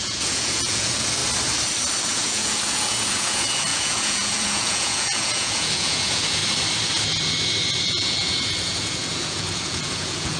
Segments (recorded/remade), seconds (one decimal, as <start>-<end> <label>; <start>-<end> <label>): 0.0-1.2 remade; 1.2-2.1 recorded; 2.1-6.4 remade; 6.4-7.9 recorded; 7.9-10.4 remade

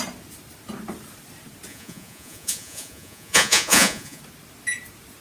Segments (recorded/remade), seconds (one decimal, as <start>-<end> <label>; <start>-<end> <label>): 0.0-1.7 recorded; 1.7-4.2 remade; 4.2-5.2 recorded

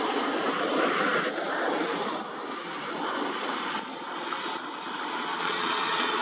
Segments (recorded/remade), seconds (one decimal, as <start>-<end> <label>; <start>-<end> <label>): 0.0-5.3 recorded; 5.3-6.2 remade

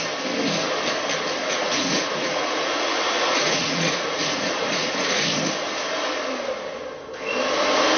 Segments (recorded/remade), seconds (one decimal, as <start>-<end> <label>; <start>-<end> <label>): 0.0-1.5 recorded; 1.5-5.4 remade; 5.4-8.0 recorded